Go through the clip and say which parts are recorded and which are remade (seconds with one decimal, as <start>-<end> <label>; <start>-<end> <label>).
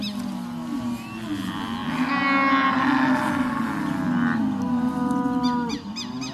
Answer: 0.0-6.3 recorded